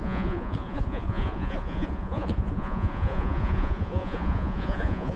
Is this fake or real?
fake